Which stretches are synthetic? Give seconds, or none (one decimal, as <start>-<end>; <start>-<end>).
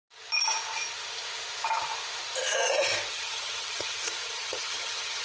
3.1-5.2